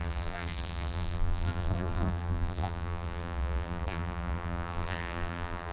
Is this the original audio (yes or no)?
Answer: no